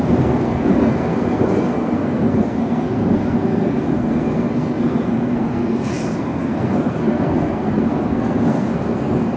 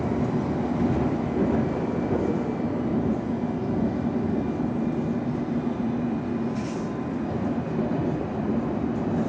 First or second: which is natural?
second